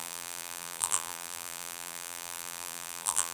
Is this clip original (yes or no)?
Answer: no